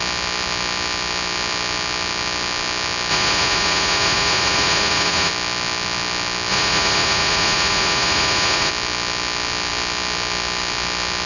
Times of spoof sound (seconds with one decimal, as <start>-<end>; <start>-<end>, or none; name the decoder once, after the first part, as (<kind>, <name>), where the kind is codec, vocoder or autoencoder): 3.1-5.3 (vocoder, Vocos); 6.5-8.7